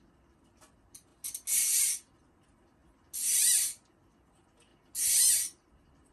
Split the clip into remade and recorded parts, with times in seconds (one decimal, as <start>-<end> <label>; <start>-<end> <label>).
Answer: 0.0-6.1 recorded